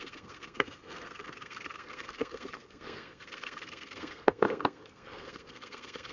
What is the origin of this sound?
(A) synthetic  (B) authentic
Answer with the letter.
A